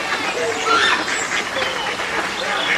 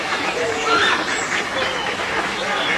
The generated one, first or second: second